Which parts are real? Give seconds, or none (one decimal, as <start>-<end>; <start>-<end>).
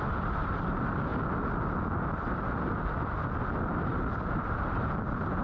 0.0-5.4